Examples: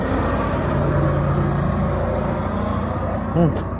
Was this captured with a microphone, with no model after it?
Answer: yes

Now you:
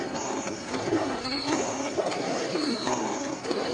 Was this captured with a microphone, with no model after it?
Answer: no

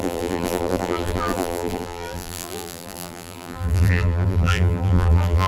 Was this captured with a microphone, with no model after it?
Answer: no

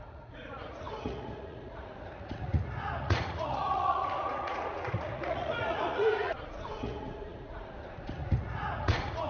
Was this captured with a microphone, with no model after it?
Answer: no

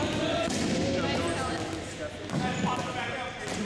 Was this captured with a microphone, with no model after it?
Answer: yes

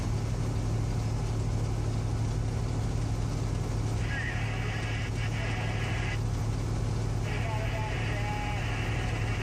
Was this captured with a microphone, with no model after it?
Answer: yes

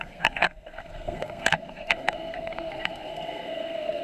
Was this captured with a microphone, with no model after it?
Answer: no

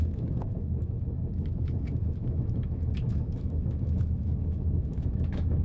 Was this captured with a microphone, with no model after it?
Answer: no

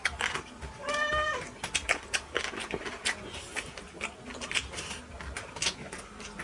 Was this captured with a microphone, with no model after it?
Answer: yes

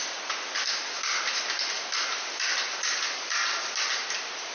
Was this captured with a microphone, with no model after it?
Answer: yes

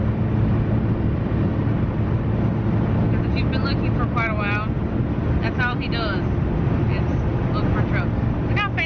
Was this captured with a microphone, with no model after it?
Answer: yes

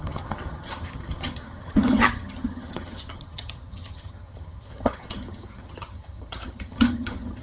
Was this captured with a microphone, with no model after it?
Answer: no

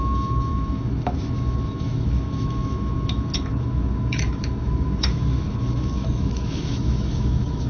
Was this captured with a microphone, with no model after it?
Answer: no